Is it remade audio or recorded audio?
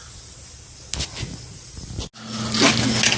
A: recorded